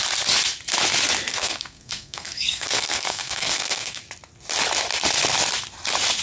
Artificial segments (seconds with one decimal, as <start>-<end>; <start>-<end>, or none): 1.3-4.0

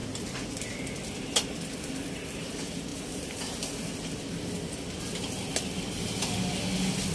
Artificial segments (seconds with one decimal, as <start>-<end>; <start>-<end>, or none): none

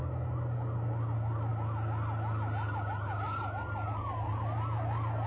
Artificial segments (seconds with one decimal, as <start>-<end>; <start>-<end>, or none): none

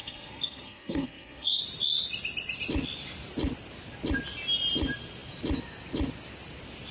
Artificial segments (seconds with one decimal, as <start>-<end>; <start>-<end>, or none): 0.0-1.6